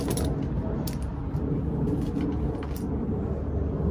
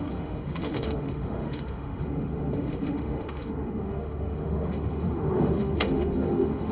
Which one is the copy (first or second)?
second